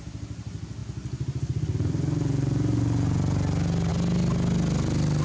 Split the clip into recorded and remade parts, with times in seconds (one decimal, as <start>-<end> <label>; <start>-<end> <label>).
0.0-5.2 recorded